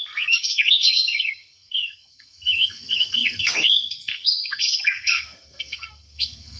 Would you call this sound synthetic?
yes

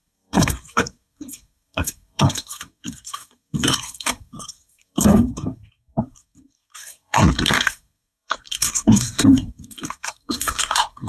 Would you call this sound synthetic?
yes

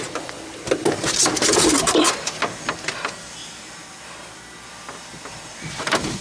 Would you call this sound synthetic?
no